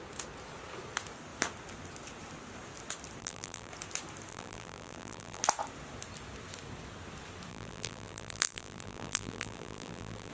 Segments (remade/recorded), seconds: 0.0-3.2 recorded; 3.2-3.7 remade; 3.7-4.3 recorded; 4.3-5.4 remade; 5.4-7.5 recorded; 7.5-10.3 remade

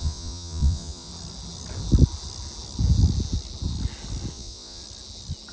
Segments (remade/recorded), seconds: 0.0-1.1 remade; 1.1-4.3 recorded; 4.3-4.8 remade; 4.8-5.5 recorded

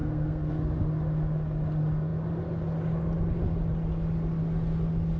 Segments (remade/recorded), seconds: 0.0-0.5 remade; 0.5-5.2 recorded

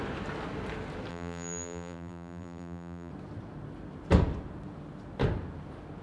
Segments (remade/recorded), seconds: 0.0-1.1 recorded; 1.1-3.1 remade; 3.1-6.0 recorded

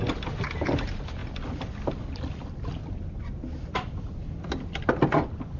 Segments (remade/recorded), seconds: 0.0-5.6 recorded

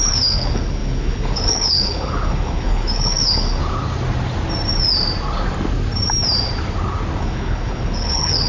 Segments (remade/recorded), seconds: 0.0-3.6 remade; 3.6-7.2 recorded; 7.2-8.5 remade

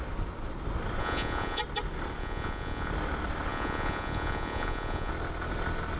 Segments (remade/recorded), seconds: 0.0-1.0 recorded; 1.0-1.6 remade; 1.6-2.2 recorded; 2.2-2.9 remade; 2.9-3.5 recorded; 3.5-5.1 remade; 5.1-6.0 recorded

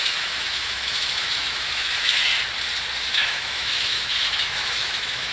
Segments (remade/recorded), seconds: 0.0-2.3 remade; 2.3-3.1 recorded; 3.1-5.3 remade